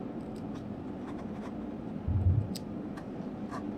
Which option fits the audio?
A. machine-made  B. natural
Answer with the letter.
A